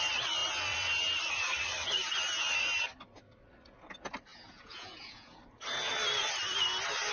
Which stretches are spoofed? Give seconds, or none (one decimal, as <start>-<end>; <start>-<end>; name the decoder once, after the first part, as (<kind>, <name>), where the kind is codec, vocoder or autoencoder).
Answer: 4.3-5.4 (vocoder, Vocos)

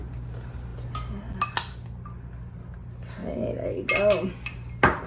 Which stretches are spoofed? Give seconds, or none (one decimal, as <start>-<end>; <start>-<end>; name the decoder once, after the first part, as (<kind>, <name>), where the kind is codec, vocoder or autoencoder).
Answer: none

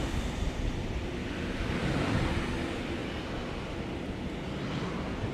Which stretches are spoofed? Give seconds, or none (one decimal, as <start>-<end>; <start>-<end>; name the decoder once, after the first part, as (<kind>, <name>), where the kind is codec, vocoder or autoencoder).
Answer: none

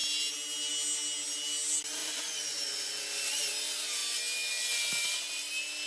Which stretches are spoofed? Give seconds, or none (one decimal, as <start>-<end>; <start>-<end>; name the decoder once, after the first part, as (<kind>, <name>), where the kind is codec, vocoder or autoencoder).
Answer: 2.0-3.4 (vocoder, Vocos)